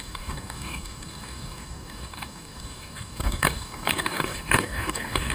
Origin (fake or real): fake